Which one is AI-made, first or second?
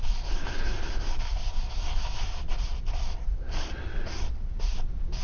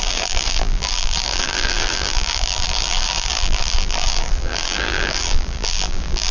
second